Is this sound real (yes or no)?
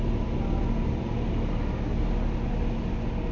yes